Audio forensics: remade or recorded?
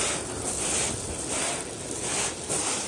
recorded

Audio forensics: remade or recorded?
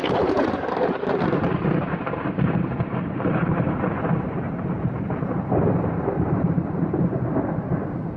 remade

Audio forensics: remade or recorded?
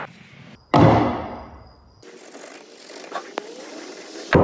recorded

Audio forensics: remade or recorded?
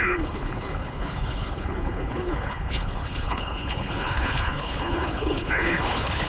remade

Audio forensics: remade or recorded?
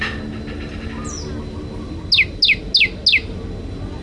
recorded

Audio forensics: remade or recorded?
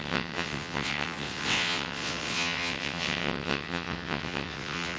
remade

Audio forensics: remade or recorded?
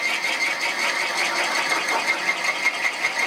remade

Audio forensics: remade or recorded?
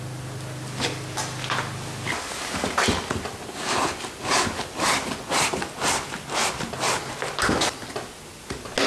recorded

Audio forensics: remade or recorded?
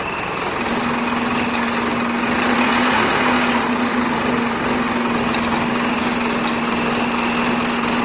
recorded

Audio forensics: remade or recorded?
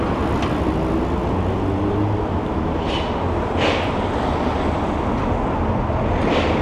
recorded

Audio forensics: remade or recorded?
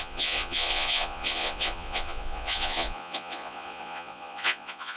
remade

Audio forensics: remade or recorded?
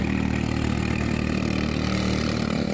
recorded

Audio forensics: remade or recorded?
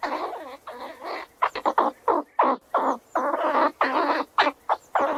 recorded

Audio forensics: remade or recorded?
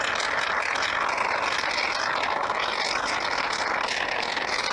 recorded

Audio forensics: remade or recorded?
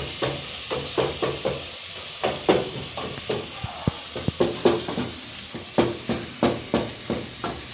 recorded